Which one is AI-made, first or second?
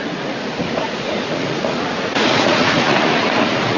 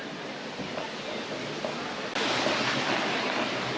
first